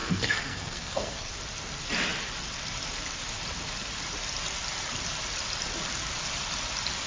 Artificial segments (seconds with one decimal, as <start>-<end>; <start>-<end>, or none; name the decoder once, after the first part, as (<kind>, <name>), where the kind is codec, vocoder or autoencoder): 0.0-1.3 (codec, SNAC)